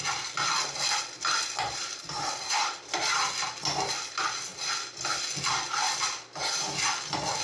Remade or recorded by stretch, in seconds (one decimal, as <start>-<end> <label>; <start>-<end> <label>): 0.0-7.4 recorded